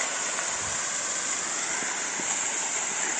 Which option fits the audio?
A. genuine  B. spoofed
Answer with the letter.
A